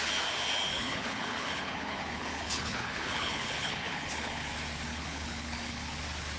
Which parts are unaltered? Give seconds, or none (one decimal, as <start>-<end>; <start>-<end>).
0.0-0.7; 4.5-4.9; 6.0-6.4